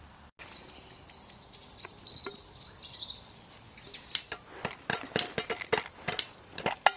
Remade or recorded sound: recorded